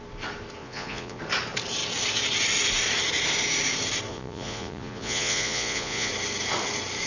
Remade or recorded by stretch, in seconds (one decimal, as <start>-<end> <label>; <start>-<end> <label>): 0.0-0.6 recorded; 0.6-1.2 remade; 1.2-4.1 recorded; 4.1-6.1 remade; 6.1-7.1 recorded